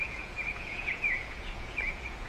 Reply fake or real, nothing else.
fake